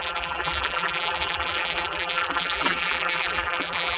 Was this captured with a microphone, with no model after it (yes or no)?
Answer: no